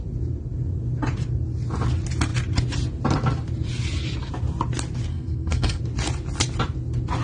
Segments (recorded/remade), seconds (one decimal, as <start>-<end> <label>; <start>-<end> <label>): 0.0-5.1 recorded; 5.1-5.8 remade; 5.8-7.2 recorded